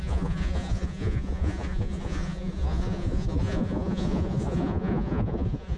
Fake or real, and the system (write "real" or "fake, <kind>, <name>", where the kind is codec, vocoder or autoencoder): fake, vocoder, Vocos